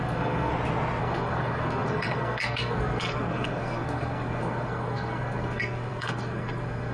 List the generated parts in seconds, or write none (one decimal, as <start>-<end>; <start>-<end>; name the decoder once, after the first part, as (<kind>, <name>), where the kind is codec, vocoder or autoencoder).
0.0-0.5 (codec, SNAC); 1.0-6.9